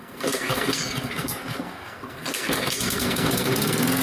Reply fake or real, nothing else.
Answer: fake